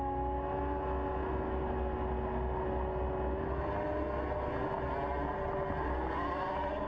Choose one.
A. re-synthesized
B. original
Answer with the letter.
B